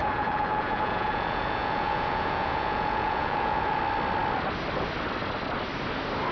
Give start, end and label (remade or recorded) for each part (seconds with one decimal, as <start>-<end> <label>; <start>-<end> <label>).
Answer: 0.0-3.8 remade; 3.8-6.3 recorded